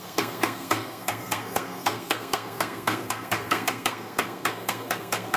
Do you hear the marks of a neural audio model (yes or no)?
yes